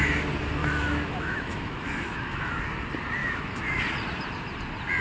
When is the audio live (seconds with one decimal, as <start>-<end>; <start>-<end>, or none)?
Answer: 0.0-0.6; 2.5-3.2; 3.8-5.0